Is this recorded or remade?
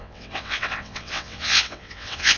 remade